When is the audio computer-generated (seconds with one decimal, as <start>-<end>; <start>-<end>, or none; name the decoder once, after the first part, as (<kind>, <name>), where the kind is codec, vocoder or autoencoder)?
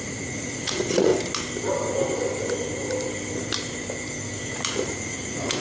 0.0-1.1 (vocoder, Vocos); 4.5-5.6